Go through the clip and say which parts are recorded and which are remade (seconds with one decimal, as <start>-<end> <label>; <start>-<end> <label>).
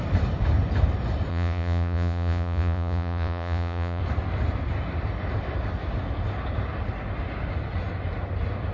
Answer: 0.0-1.3 recorded; 1.3-4.0 remade; 4.0-8.7 recorded